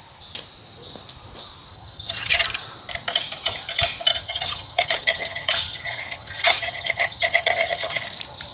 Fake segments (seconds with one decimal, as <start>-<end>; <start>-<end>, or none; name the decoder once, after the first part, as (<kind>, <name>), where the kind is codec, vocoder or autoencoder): 1.7-2.3 (vocoder, HiFi-GAN); 4.1-8.0